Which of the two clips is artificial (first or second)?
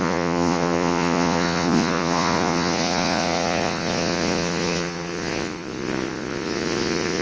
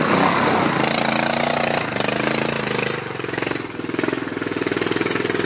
first